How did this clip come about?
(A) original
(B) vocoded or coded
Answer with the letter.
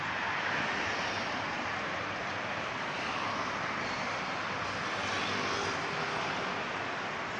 A